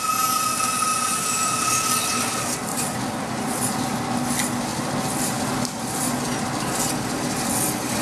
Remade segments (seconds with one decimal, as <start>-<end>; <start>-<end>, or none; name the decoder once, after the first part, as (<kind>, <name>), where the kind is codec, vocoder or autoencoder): 2.7-4.0 (vocoder, BigVGAN v2); 4.7-8.0